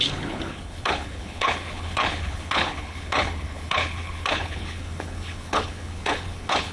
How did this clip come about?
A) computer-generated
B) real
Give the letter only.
A